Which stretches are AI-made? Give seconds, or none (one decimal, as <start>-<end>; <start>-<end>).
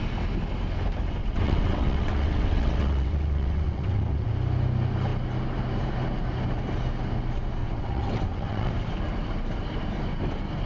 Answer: 1.2-4.3; 7.6-8.7